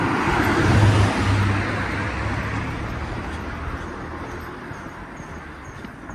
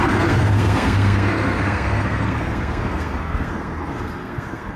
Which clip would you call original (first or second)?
first